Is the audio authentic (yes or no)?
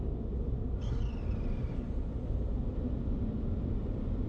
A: yes